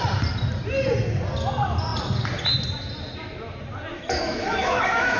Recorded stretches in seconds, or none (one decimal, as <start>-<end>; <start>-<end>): 0.0-3.9